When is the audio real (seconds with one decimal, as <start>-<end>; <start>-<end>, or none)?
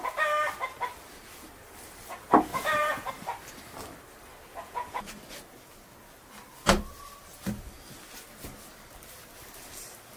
0.0-2.5; 3.1-4.5; 5.1-10.2